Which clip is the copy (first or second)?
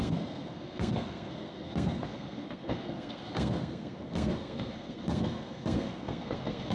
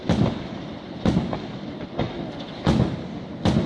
first